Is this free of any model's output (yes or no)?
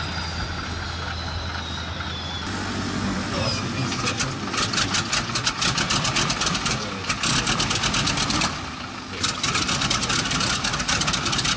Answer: yes